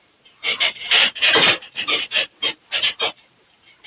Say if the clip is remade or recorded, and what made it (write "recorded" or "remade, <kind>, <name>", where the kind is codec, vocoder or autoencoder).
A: remade, vocoder, BigVGAN v2